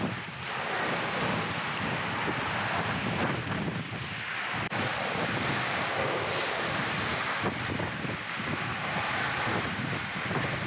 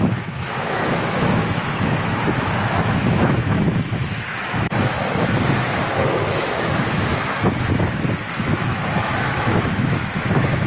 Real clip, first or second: first